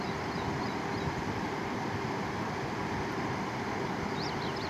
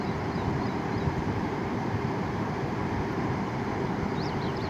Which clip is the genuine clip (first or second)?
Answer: first